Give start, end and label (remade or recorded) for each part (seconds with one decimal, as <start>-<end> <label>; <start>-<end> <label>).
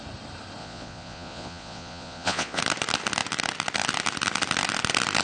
0.0-0.6 recorded; 0.6-2.6 remade; 2.6-5.2 recorded